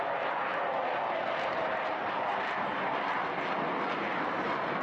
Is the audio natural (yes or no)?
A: yes